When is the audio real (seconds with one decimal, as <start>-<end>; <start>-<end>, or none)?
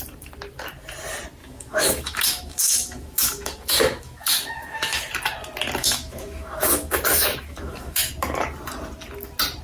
0.0-1.4; 5.0-5.8; 8.1-9.6